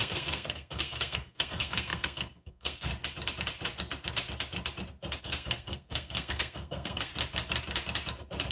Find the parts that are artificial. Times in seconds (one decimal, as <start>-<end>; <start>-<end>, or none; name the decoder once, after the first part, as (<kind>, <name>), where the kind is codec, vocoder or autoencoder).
0.0-2.9 (codec, SNAC); 5.2-7.1